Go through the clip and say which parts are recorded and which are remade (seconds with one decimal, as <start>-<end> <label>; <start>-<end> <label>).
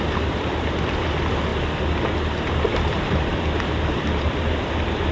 0.0-1.5 remade; 1.5-2.7 recorded; 2.7-5.1 remade